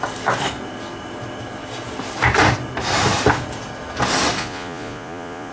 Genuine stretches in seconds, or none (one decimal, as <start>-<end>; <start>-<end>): 0.0-4.4